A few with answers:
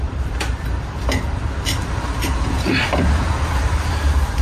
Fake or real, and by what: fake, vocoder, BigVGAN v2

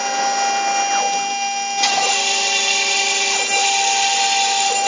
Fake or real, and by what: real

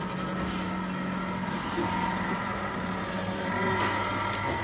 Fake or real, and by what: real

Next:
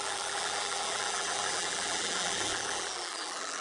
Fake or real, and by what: fake, vocoder, BigVGAN v2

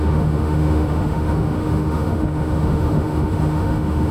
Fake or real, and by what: fake, autoencoder, DAC-VAE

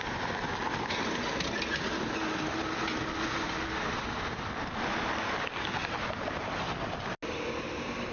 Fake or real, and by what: real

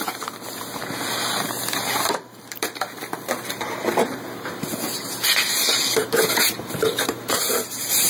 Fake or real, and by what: fake, vocoder, BigVGAN v2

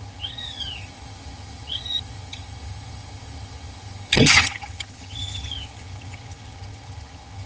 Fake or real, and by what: fake, vocoder, HiFi-GAN